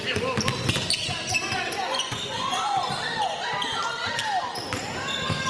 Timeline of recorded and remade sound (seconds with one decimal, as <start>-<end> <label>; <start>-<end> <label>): 0.0-1.9 recorded; 1.9-2.9 remade; 2.9-5.5 recorded

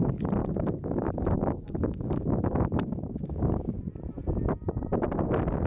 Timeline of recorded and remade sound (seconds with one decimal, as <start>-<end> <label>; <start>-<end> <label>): 0.0-0.4 recorded; 0.4-3.8 remade; 3.8-5.7 recorded

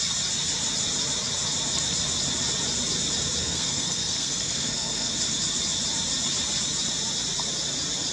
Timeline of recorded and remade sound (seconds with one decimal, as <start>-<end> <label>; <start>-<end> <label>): 0.0-3.4 recorded; 3.4-5.1 remade; 5.1-8.1 recorded

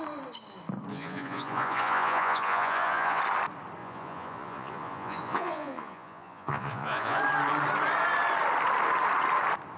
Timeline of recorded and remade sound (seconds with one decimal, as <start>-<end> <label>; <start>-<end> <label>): 0.0-0.9 recorded; 0.9-3.2 remade; 3.2-3.8 recorded; 3.8-7.2 remade; 7.2-9.8 recorded

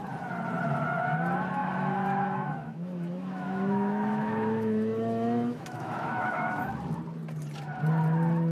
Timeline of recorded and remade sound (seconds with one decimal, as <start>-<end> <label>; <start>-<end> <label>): 0.0-1.6 recorded; 1.6-6.6 remade; 6.6-8.5 recorded

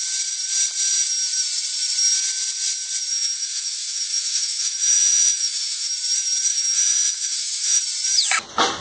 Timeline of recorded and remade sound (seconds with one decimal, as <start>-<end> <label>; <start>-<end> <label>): 0.0-3.1 recorded; 3.1-5.9 remade; 5.9-6.5 recorded; 6.5-7.8 remade; 7.8-8.8 recorded